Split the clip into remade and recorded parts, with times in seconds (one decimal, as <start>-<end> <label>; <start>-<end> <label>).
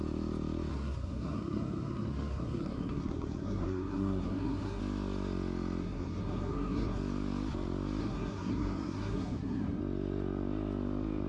0.0-0.7 recorded; 0.7-4.8 remade; 4.8-5.8 recorded; 5.8-7.0 remade; 7.0-8.0 recorded; 8.0-9.8 remade; 9.8-11.3 recorded